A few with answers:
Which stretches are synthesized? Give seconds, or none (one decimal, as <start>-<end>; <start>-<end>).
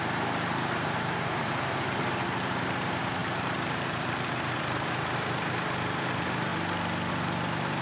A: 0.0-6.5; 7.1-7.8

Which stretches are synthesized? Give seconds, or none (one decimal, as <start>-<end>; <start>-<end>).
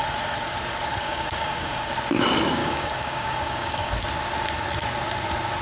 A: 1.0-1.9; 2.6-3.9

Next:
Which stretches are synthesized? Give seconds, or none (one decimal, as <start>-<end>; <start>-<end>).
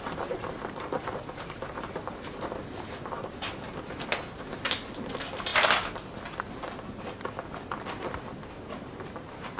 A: 0.0-4.5; 5.1-5.5; 8.5-9.6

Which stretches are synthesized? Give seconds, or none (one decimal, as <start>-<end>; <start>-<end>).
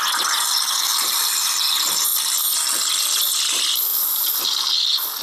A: 0.9-1.5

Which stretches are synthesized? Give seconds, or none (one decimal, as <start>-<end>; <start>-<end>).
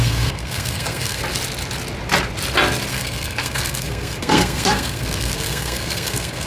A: 0.0-1.2; 2.9-6.5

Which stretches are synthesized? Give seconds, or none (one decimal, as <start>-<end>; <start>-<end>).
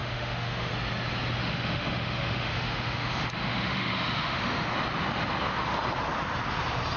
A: 0.0-0.7; 1.4-4.7